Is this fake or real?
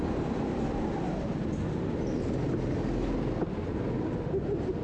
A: real